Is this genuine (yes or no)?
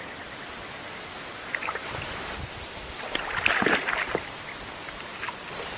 yes